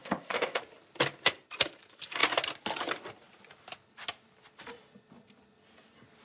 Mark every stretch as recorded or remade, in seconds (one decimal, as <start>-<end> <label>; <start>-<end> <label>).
0.0-0.6 remade; 0.6-6.2 recorded